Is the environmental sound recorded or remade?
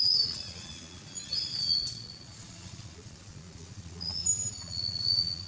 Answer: remade